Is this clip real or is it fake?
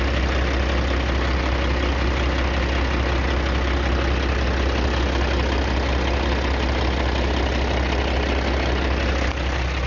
real